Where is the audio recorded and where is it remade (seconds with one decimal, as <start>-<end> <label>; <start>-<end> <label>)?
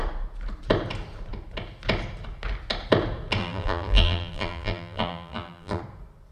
0.0-3.4 recorded; 3.4-5.8 remade; 5.8-6.3 recorded